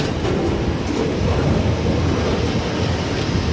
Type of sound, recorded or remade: recorded